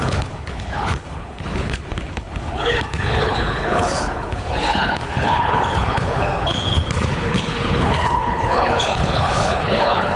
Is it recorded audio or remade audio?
remade